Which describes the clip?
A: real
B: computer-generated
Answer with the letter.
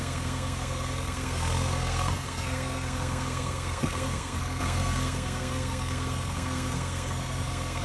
B